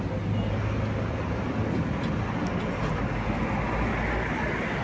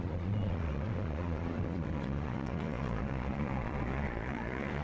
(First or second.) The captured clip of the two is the first